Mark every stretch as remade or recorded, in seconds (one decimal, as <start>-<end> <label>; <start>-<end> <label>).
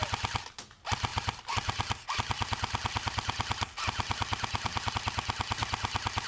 0.0-1.1 recorded; 1.1-4.9 remade; 4.9-6.3 recorded